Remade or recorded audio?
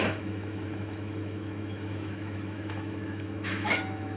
remade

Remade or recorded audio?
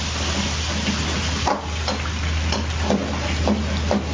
recorded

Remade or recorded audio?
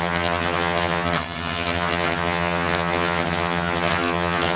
remade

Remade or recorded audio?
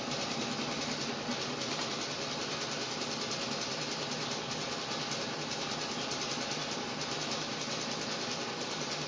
recorded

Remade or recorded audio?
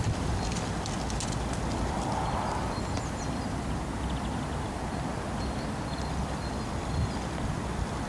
recorded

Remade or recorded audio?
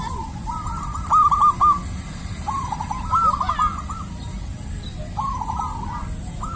recorded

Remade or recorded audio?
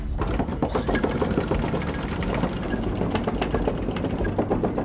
recorded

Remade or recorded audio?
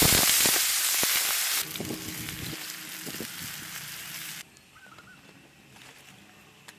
recorded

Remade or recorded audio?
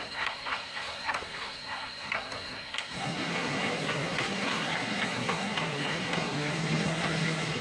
remade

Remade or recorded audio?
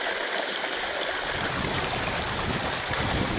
recorded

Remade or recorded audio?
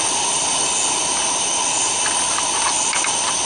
recorded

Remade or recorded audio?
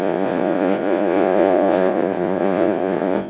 remade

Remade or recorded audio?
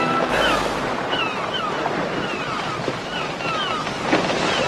recorded